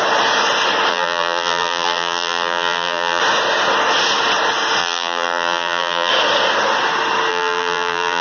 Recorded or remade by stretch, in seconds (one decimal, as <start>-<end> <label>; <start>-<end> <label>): 0.0-0.9 recorded; 0.9-3.2 remade; 3.2-4.8 recorded; 4.8-6.1 remade; 6.1-7.3 recorded; 7.3-8.2 remade